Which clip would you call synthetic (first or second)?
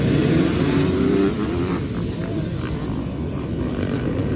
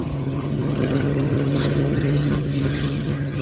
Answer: second